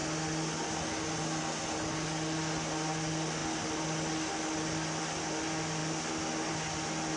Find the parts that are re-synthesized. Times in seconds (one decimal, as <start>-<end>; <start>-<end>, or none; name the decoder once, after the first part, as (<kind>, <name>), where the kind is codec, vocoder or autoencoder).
none